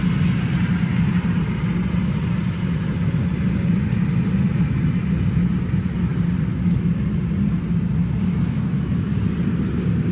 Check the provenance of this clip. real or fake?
real